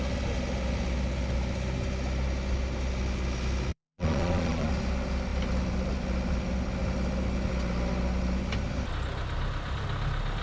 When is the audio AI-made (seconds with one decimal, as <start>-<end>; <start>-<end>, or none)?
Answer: 3.7-4.7